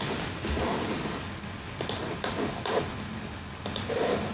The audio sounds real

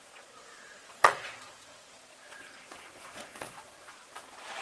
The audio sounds fake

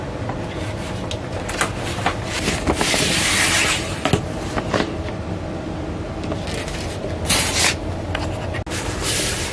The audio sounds real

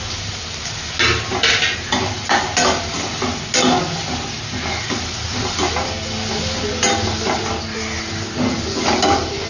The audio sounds real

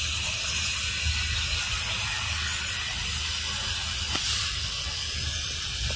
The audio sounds real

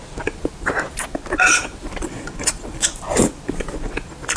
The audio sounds real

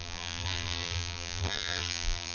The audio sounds fake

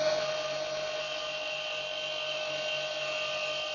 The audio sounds real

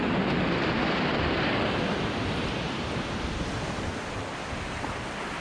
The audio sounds fake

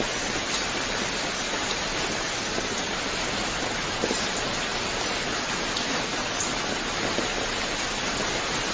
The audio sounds real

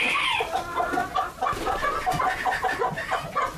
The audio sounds real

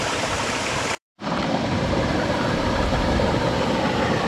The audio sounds fake